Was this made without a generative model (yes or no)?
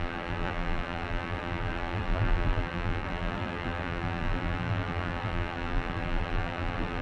no